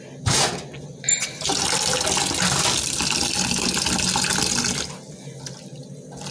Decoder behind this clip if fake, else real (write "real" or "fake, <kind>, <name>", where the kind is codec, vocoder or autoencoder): real